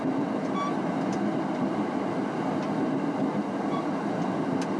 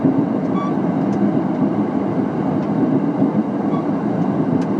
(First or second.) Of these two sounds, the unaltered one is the first